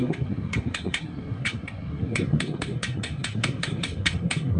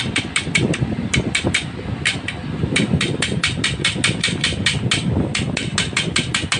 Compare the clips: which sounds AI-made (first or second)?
first